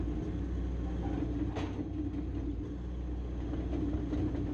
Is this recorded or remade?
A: recorded